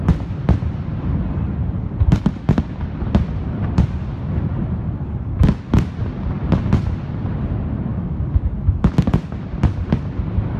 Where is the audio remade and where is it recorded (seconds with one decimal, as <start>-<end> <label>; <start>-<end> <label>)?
0.0-7.9 recorded; 7.9-8.4 remade; 8.4-10.6 recorded